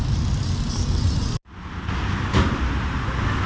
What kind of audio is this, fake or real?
real